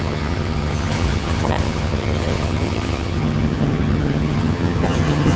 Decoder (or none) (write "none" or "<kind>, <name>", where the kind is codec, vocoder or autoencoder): vocoder, HiFi-GAN